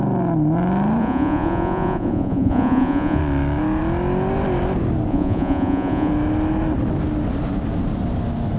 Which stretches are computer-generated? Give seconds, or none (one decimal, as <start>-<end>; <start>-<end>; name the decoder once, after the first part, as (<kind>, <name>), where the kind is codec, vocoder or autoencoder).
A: 1.0-3.2 (vocoder, Vocos); 5.1-6.1